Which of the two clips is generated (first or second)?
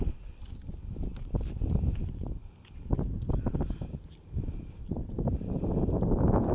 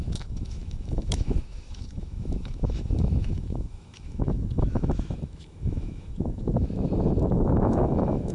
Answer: second